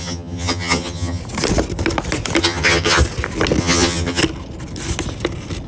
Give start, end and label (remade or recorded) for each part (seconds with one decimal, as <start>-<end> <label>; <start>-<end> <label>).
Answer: 0.0-1.2 remade; 1.2-2.4 recorded; 2.4-3.0 remade; 3.0-3.6 recorded; 3.6-4.2 remade; 4.2-5.7 recorded